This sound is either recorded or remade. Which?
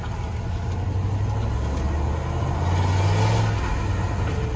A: recorded